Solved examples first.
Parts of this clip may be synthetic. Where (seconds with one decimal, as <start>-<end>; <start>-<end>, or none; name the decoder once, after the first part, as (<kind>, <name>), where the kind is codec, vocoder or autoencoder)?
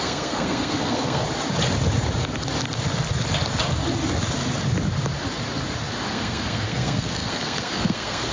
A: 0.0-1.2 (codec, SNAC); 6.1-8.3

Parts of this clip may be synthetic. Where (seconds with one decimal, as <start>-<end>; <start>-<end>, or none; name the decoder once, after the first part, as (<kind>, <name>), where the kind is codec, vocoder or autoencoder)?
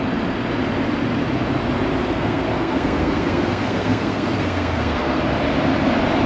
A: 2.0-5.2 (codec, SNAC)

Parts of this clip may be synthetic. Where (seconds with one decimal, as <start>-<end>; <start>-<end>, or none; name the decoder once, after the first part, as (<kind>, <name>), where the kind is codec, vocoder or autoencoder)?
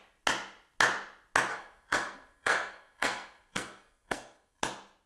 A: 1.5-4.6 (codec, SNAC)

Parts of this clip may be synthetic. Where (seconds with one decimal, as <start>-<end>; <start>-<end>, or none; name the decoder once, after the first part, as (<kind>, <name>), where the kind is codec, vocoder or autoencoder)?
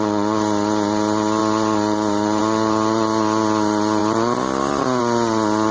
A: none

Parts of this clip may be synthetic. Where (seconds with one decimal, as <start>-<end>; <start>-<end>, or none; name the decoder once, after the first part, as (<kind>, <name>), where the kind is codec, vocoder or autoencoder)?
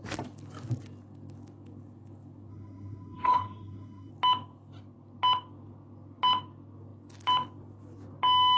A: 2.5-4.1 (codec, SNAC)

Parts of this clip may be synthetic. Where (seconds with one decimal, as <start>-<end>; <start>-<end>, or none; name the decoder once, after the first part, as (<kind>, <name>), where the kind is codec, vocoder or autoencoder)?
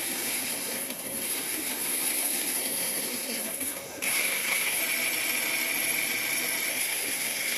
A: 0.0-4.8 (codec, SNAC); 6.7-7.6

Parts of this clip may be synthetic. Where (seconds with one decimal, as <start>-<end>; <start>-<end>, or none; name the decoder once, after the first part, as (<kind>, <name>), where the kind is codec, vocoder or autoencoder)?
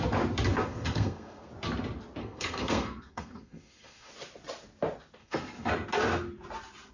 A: 0.6-1.5 (codec, SNAC); 2.2-4.1; 5.2-5.7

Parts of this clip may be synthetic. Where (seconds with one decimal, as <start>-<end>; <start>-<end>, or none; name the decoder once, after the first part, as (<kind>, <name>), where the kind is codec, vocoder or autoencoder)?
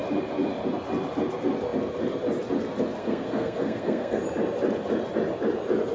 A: 3.0-4.2 (codec, SNAC)